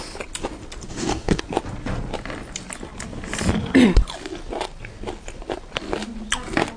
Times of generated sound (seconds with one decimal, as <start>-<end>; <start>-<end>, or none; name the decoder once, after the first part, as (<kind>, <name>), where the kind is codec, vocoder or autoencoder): 0.9-1.4 (codec, DAC)